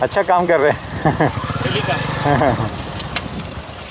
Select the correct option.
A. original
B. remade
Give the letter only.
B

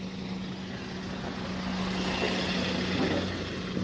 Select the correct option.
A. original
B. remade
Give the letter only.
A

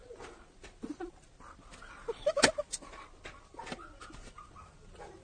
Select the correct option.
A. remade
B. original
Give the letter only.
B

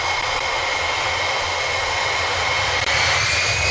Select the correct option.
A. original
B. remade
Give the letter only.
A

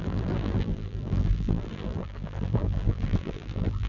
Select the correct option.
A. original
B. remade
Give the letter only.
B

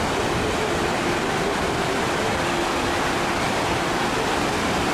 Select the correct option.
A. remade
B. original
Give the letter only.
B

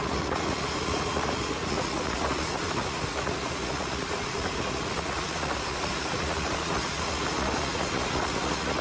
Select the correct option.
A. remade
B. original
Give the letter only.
A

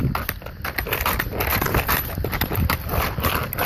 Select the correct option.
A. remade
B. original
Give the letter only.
B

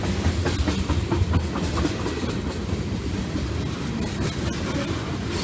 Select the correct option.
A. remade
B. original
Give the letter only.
B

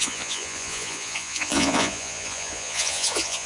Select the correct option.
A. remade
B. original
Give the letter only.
A